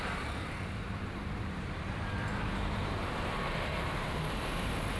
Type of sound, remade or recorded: remade